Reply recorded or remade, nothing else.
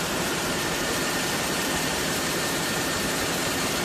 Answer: remade